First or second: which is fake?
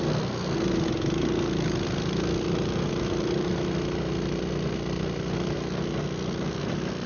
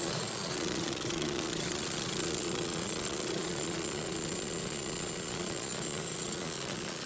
second